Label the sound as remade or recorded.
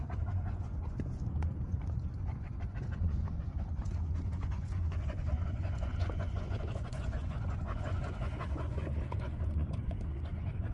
remade